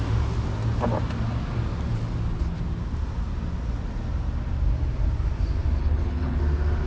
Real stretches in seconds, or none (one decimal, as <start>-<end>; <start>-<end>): 0.0-5.8; 6.4-6.9